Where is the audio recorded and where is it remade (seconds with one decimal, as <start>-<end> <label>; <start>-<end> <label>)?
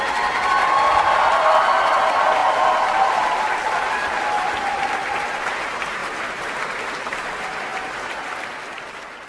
0.0-2.4 recorded; 2.4-4.2 remade; 4.2-6.0 recorded; 6.0-6.8 remade; 6.8-9.3 recorded